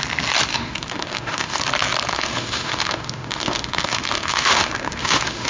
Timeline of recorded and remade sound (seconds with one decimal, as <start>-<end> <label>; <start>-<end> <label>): 0.0-0.5 recorded; 0.5-1.6 remade; 1.6-2.1 recorded; 2.1-5.5 remade